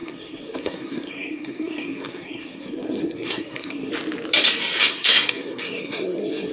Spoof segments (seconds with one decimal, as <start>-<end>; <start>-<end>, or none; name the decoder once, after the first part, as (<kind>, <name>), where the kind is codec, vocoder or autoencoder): 0.0-3.9 (codec, SNAC); 4.8-6.5